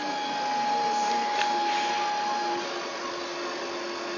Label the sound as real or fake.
real